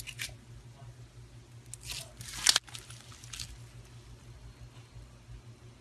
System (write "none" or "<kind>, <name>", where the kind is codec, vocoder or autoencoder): none